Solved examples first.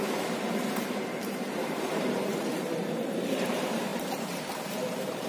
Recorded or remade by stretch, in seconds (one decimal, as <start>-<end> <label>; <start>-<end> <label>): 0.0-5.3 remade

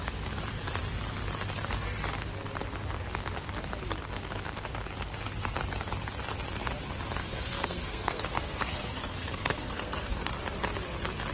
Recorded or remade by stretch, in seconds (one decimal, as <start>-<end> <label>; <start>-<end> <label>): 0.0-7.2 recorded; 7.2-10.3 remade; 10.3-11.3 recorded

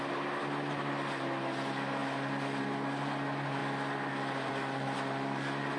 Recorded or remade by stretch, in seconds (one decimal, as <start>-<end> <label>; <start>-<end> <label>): 0.0-5.8 recorded

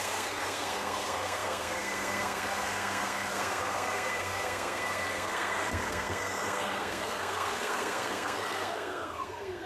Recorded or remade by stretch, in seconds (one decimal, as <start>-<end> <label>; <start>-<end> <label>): 0.0-9.7 remade

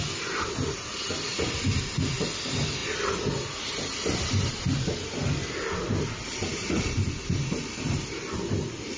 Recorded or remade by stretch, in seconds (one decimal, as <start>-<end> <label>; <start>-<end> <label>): 0.0-9.0 recorded

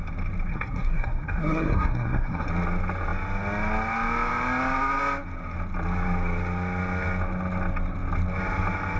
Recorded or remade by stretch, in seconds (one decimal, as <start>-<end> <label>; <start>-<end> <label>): 0.0-0.5 recorded; 0.5-2.5 remade; 2.5-9.0 recorded

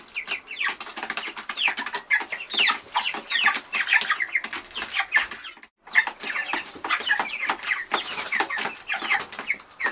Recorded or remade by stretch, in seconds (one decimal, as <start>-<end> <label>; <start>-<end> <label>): 0.0-9.9 recorded